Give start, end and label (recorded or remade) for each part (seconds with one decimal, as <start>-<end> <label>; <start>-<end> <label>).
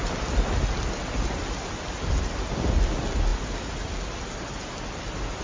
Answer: 0.0-5.4 recorded